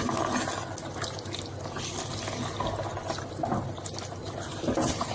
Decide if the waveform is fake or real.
real